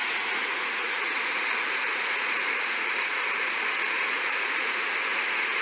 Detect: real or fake fake